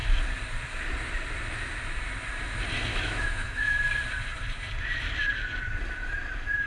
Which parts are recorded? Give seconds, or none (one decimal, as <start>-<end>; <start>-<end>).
0.0-2.9; 3.8-6.7